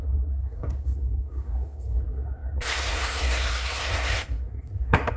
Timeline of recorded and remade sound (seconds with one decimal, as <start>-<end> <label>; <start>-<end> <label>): 0.0-5.2 remade